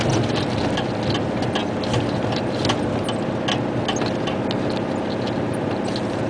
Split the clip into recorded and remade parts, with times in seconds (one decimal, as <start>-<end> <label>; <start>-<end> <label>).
0.0-6.3 recorded